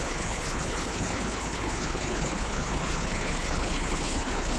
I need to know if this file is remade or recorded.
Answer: remade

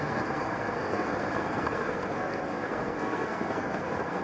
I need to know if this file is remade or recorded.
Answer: remade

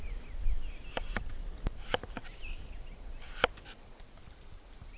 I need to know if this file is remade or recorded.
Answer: recorded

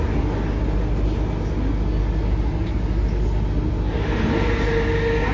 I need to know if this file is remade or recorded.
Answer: recorded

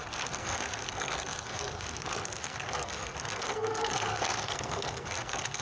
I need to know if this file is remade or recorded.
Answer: remade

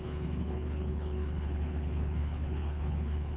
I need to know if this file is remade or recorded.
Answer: remade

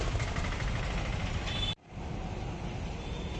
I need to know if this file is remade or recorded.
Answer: recorded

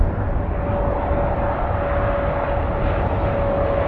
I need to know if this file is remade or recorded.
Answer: recorded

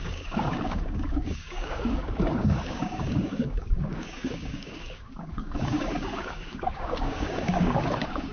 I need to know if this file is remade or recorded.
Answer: remade